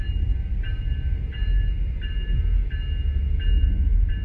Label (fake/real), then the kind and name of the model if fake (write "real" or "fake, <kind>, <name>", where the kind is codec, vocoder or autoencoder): real